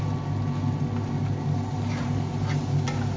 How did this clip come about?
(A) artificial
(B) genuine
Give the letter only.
B